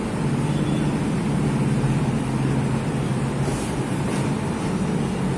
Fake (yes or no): yes